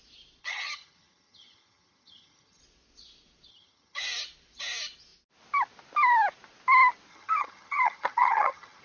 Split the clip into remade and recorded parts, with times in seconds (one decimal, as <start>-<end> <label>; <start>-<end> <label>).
0.0-0.4 recorded; 0.4-2.6 remade; 2.6-3.5 recorded; 3.5-4.0 remade; 4.0-7.1 recorded; 7.1-8.8 remade